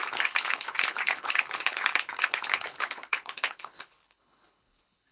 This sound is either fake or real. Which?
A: fake